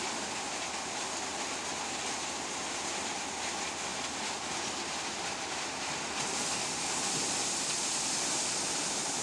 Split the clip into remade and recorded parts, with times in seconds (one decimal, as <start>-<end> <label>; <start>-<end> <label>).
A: 0.0-9.2 recorded